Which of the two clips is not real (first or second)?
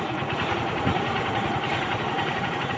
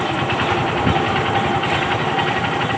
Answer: first